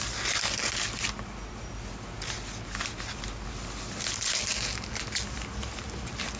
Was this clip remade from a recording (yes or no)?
no